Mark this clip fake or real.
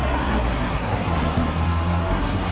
fake